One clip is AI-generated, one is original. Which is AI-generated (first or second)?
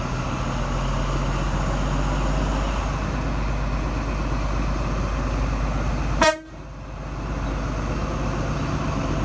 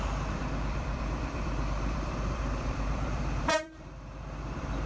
second